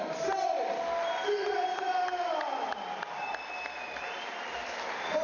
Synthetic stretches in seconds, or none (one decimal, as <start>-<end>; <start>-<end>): none